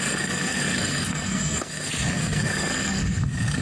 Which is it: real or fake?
fake